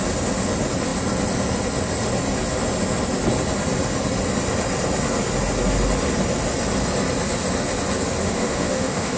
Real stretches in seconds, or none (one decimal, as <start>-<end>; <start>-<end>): 0.0-8.2